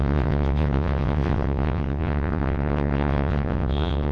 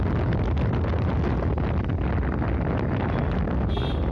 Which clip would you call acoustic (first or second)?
second